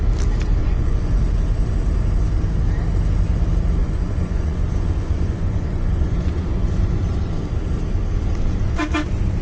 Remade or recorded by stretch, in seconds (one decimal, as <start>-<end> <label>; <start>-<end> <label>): 0.0-0.6 recorded; 0.6-1.2 remade; 1.2-3.8 recorded; 3.8-7.0 remade; 7.0-9.4 recorded